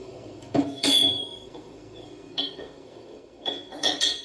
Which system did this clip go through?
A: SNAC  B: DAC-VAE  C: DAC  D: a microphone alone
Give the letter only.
A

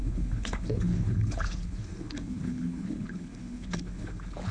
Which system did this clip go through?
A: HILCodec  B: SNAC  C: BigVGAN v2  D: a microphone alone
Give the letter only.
A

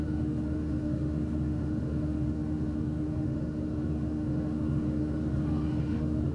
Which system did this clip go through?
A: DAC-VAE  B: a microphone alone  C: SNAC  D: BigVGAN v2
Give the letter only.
A